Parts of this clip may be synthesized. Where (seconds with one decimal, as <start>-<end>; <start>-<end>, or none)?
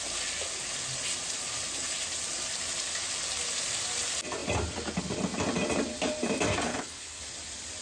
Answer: 6.7-7.2